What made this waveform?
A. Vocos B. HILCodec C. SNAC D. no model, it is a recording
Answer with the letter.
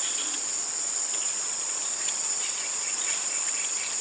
A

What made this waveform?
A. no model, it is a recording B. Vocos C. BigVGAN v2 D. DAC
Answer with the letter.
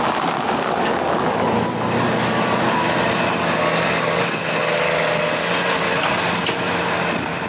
A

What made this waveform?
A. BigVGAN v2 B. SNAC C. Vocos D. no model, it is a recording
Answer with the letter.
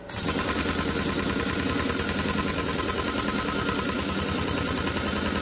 D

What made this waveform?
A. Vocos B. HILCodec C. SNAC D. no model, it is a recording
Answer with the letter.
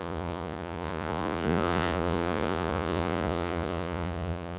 A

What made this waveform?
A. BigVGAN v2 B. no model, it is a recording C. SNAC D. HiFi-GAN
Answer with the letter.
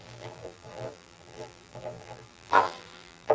A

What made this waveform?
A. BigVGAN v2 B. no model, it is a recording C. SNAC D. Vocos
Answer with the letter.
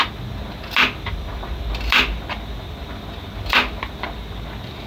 B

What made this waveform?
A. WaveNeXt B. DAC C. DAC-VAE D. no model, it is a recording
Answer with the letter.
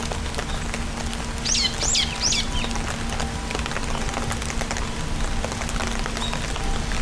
D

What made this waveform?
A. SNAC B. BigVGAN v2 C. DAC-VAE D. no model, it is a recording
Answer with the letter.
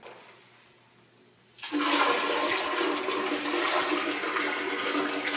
D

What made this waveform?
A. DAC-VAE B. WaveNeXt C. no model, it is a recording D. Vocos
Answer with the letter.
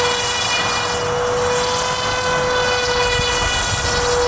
C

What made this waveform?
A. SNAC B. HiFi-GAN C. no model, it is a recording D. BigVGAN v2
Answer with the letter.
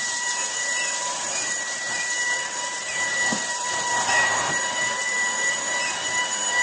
D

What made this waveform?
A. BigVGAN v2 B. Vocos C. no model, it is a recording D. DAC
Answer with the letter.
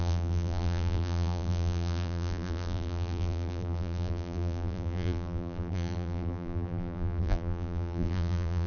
A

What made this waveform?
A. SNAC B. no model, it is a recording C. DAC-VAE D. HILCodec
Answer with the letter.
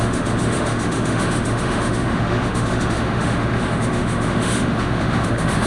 C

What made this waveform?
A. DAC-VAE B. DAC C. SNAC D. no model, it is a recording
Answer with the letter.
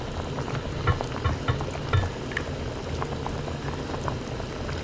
D